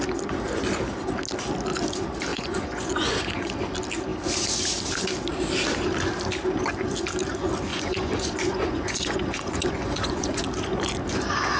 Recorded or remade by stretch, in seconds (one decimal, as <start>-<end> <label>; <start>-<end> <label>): 0.0-2.3 recorded; 2.3-3.5 remade; 3.5-7.7 recorded; 7.7-10.4 remade; 10.4-11.6 recorded